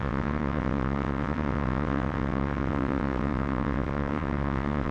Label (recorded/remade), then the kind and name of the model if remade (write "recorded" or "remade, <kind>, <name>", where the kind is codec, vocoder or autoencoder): remade, vocoder, WaveNeXt